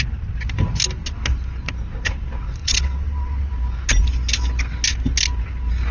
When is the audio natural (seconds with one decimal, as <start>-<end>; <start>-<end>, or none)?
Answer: 0.0-2.6; 3.5-5.9